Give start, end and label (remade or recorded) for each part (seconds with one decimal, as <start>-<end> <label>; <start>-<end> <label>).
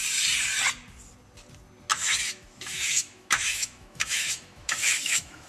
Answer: 0.0-1.9 recorded; 1.9-5.5 remade